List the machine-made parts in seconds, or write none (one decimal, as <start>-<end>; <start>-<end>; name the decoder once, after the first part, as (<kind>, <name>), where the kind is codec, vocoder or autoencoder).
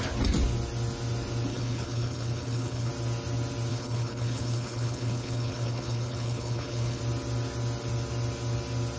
1.5-2.9 (codec, HILCodec); 3.7-7.0